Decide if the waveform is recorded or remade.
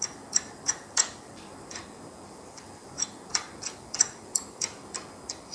remade